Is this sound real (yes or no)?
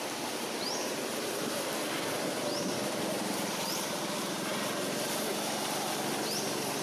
no